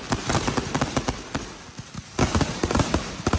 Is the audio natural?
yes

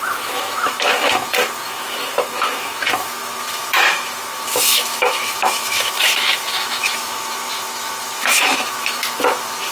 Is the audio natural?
no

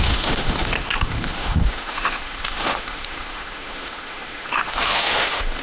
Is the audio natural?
no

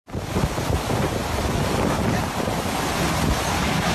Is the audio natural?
yes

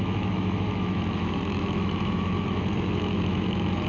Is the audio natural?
no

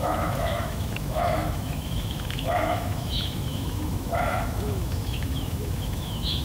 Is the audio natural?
no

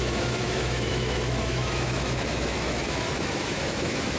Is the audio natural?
no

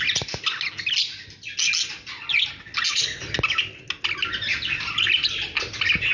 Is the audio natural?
yes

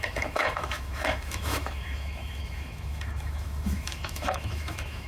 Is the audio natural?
no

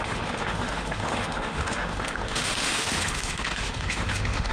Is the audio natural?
no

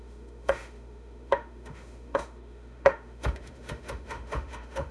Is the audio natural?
no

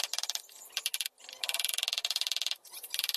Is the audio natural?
yes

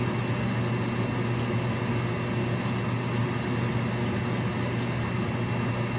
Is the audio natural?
yes